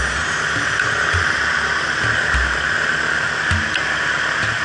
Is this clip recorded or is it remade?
recorded